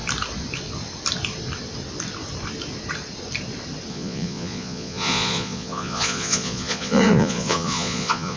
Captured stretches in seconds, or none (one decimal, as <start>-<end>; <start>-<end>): 0.0-3.9